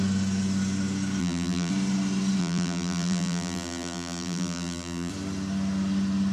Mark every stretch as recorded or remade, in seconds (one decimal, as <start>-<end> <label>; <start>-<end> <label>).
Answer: 0.0-1.2 recorded; 1.2-1.7 remade; 1.7-2.4 recorded; 2.4-5.1 remade; 5.1-6.3 recorded

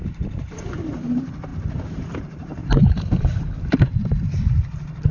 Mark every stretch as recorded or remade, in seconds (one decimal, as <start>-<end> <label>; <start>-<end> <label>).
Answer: 0.0-1.1 recorded; 1.1-5.1 remade

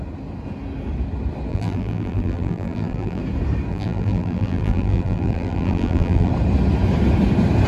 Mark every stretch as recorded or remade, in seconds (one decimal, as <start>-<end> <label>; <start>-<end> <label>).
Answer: 0.0-1.5 recorded; 1.5-3.2 remade; 3.2-3.7 recorded; 3.7-6.3 remade; 6.3-7.7 recorded

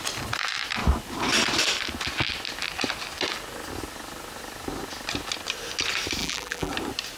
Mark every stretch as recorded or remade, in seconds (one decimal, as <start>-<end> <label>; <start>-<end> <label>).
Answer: 0.0-6.2 recorded; 6.2-6.7 remade; 6.7-7.2 recorded

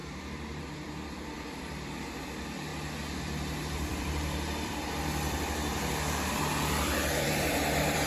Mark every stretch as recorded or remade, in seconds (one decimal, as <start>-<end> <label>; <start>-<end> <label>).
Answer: 0.0-0.6 recorded; 0.6-2.7 remade; 2.7-3.2 recorded; 3.2-8.1 remade

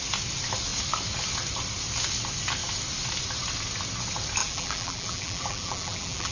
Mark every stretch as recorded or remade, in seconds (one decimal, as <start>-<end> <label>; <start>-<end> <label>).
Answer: 0.0-4.4 recorded; 4.4-6.3 remade